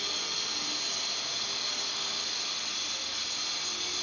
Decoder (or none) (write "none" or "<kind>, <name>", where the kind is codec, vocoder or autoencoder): none